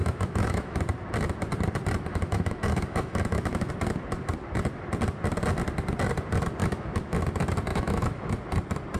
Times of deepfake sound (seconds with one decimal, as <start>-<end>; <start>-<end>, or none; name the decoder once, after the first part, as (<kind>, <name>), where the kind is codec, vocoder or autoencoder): 0.0-0.8 (autoencoder, DAC-VAE); 2.1-3.7; 6.6-7.2; 7.7-8.3